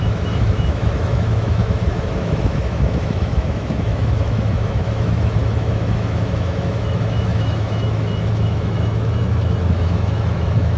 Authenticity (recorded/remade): remade